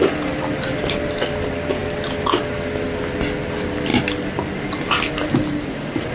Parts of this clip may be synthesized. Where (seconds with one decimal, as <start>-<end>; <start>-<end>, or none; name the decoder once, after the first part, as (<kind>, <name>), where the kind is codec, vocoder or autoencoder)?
0.0-1.8 (vocoder, BigVGAN v2); 3.2-3.9; 4.6-6.1